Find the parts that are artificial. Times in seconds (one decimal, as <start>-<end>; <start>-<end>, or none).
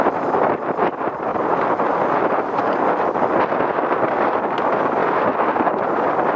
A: none